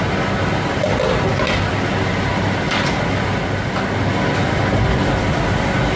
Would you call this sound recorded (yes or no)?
yes